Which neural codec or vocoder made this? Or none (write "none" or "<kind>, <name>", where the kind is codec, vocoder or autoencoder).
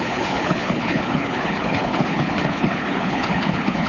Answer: codec, HILCodec